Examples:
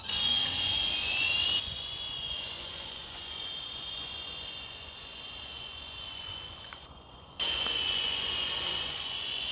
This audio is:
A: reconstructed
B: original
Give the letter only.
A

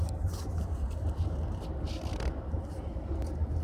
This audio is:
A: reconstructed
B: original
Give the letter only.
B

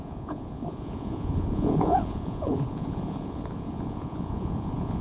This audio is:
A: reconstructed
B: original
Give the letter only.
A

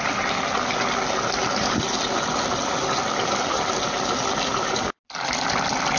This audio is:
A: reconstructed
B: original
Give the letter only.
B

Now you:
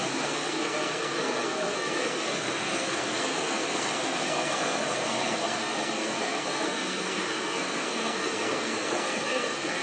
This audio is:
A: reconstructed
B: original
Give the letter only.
A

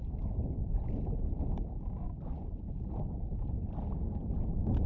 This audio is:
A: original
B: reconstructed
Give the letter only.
A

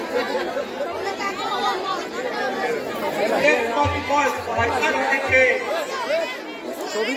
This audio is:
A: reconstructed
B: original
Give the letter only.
B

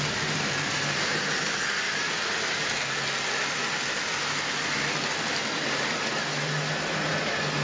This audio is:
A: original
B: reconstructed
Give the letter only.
A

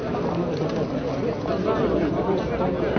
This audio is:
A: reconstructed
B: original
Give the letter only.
B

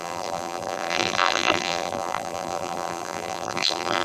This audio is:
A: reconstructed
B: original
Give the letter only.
A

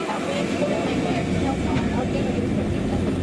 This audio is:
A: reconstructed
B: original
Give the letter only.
B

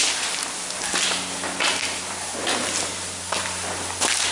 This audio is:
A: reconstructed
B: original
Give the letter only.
B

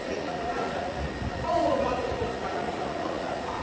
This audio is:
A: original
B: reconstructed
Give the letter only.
B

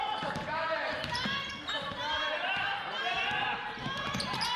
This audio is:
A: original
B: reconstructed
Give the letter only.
B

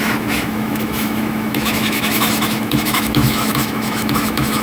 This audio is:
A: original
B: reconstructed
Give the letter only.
B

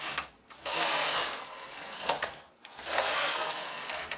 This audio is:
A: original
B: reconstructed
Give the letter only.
B